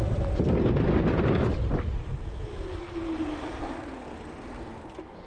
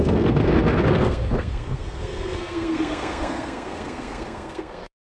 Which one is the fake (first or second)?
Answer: second